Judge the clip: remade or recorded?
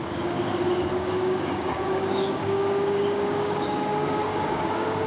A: remade